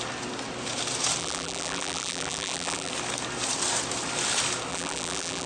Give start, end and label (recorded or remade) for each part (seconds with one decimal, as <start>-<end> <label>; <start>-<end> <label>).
0.0-1.2 recorded; 1.2-2.9 remade; 2.9-4.7 recorded; 4.7-5.5 remade